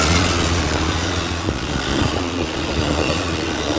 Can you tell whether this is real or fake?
fake